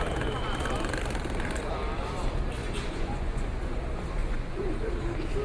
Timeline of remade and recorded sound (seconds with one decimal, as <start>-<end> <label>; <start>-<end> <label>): 0.0-2.6 recorded; 2.6-3.8 remade; 3.8-4.2 recorded; 4.2-4.9 remade; 4.9-5.4 recorded